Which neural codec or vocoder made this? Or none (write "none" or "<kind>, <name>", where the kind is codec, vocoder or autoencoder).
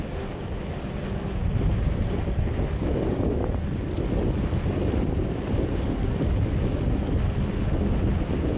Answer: none